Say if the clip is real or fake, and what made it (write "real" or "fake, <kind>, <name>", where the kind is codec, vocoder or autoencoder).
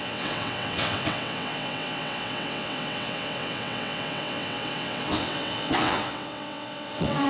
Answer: fake, vocoder, WaveNeXt